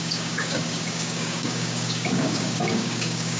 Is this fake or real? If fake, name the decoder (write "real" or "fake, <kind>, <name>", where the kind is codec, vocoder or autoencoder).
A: fake, codec, DAC